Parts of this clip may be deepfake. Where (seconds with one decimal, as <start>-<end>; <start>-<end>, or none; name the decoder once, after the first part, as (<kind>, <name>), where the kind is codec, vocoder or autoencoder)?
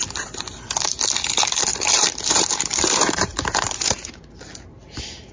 1.7-4.1 (vocoder, BigVGAN v2)